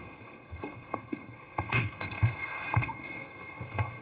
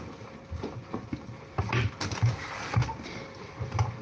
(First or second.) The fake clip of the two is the first